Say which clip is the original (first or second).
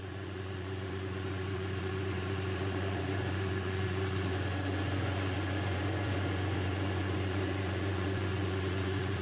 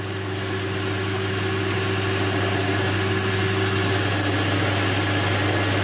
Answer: second